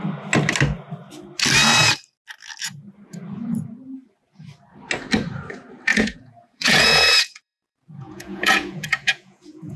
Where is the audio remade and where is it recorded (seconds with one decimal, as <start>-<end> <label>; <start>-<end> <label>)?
0.0-5.9 recorded; 5.9-9.8 remade